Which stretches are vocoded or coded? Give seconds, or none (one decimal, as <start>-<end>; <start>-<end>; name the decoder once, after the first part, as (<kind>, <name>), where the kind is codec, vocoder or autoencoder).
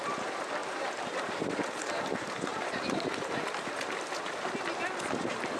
none